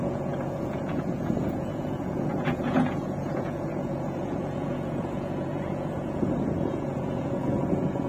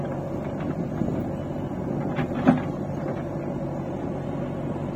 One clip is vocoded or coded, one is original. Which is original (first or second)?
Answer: second